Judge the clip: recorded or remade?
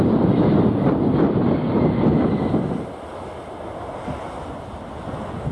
recorded